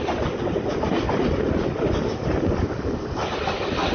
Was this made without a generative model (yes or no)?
yes